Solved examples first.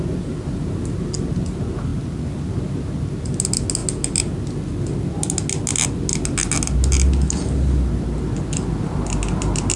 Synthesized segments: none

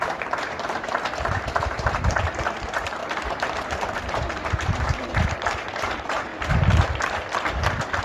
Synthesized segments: 0.0-6.3 (vocoder, BigVGAN v2)

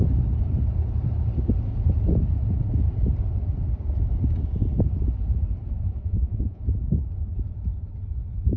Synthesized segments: 6.0-6.6 (vocoder, Vocos)

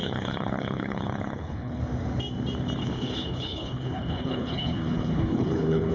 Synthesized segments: 0.0-1.8 (codec, HILCodec); 2.8-5.9